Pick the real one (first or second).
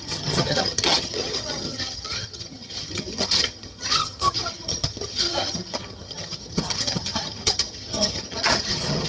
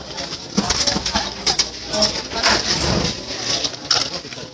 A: second